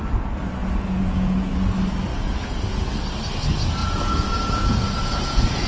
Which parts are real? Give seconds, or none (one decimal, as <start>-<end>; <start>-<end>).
0.0-0.6; 1.5-2.1; 2.9-3.8